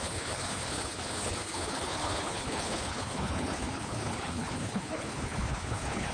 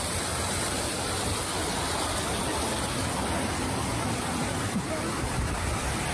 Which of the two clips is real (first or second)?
second